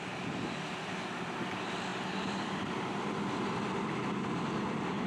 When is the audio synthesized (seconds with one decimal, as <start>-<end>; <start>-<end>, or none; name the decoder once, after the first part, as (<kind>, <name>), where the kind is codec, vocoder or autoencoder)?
1.9-5.1 (vocoder, BigVGAN v2)